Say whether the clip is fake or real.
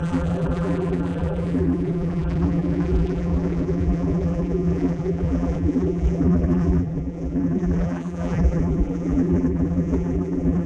fake